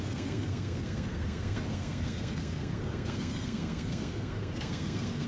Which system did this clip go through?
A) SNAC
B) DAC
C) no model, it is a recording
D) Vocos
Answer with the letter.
A